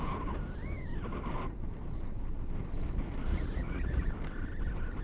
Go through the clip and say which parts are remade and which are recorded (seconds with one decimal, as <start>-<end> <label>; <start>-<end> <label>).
0.0-3.3 recorded; 3.3-4.1 remade; 4.1-5.0 recorded